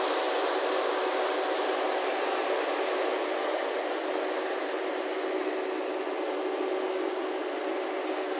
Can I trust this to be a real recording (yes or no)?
yes